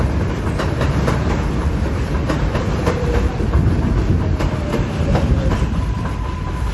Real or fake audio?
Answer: fake